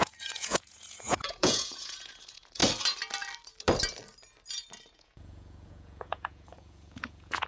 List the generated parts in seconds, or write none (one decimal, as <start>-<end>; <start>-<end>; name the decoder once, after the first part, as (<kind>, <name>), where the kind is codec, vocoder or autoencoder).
0.0-2.6 (vocoder, Vocos); 4.9-7.5